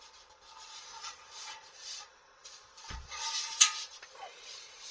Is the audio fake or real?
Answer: fake